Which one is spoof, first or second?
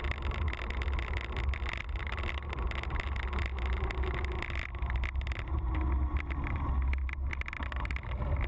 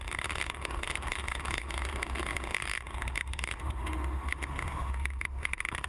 second